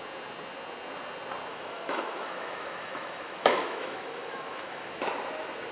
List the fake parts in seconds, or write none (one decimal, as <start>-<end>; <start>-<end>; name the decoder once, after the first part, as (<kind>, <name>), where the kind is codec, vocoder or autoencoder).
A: 1.5-4.9 (autoencoder, DAC-VAE)